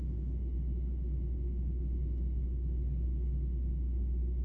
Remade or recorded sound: recorded